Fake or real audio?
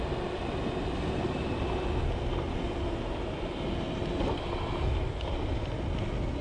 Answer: real